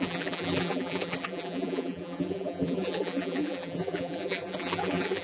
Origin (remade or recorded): remade